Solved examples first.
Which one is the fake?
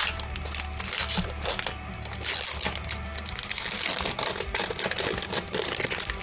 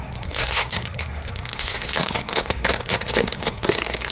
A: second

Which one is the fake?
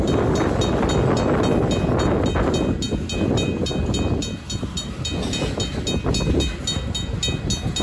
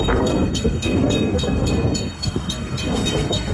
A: second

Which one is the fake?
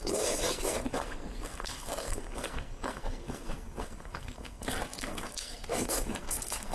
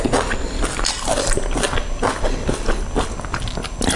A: first